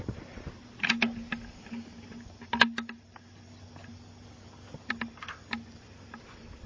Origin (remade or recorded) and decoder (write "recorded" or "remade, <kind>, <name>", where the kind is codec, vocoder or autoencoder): recorded